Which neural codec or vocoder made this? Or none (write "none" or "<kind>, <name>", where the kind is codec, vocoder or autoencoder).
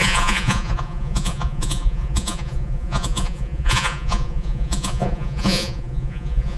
vocoder, Vocos